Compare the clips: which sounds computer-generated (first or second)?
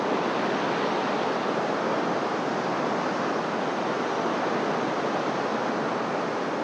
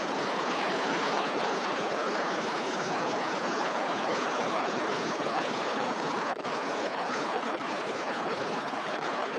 second